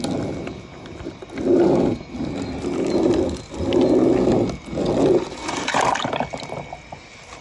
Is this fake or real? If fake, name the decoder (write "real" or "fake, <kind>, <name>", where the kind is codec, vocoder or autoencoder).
real